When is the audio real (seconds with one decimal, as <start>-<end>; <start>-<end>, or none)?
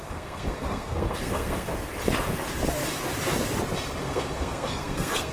1.7-4.0